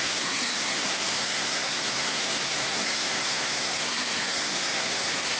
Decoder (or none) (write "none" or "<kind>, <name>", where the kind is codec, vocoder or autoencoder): codec, SNAC